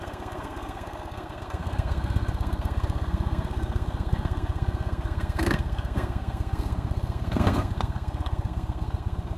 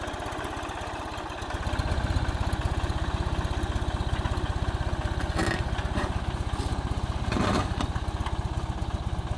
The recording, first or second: second